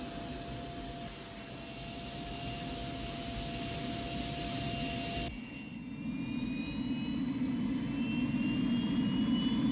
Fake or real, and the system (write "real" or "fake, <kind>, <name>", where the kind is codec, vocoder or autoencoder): real